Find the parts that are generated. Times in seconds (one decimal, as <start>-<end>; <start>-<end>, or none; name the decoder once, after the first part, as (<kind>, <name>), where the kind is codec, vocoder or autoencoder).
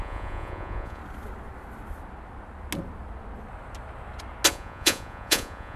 0.0-1.0 (vocoder, Vocos); 4.5-5.8